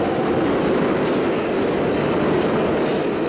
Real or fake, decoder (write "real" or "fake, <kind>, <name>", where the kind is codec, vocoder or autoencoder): real